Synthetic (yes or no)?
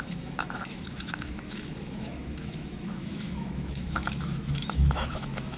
yes